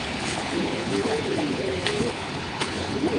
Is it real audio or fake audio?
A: fake